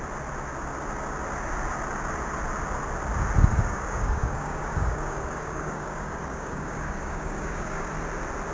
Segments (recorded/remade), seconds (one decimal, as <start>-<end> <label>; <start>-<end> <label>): 0.0-3.5 recorded; 3.5-7.9 remade; 7.9-8.5 recorded